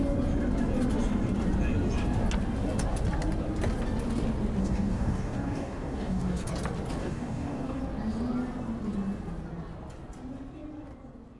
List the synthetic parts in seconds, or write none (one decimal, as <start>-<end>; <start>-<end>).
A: 4.6-6.5; 7.0-7.8